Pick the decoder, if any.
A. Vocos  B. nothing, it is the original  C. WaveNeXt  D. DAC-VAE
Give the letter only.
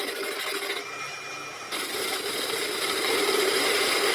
B